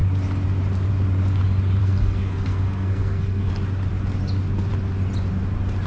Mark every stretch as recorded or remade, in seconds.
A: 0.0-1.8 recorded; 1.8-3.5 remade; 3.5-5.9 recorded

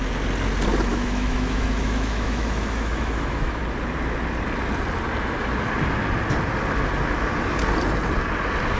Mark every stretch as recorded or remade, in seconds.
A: 0.0-0.9 recorded; 0.9-3.6 remade; 3.6-8.8 recorded

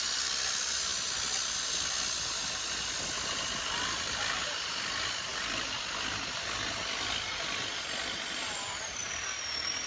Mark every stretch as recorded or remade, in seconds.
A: 0.0-9.9 recorded

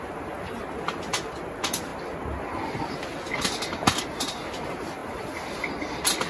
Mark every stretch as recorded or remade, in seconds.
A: 0.0-6.3 recorded

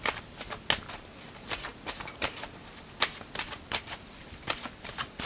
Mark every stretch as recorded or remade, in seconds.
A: 0.0-5.3 recorded